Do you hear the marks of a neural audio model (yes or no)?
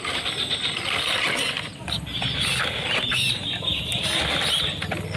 no